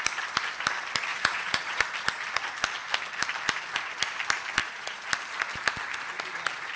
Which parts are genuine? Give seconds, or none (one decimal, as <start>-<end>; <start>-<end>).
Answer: 0.0-1.1; 1.8-4.6; 5.1-6.8